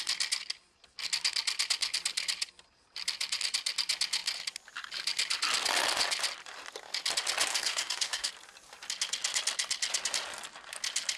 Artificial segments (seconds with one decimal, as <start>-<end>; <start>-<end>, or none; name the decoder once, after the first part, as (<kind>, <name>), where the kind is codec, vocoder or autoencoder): 7.5-8.3 (codec, DAC)